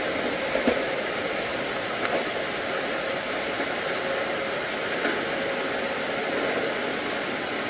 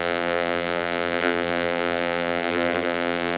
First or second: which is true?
first